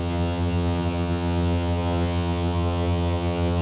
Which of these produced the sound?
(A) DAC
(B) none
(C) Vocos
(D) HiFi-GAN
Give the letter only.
D